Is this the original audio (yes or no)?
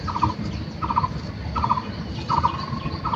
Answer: yes